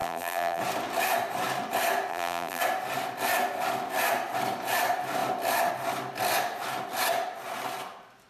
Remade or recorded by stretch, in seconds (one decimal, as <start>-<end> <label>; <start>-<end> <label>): 0.0-0.6 remade; 0.6-2.1 recorded; 2.1-2.6 remade; 2.6-8.3 recorded